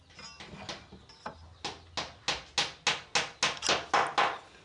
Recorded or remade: recorded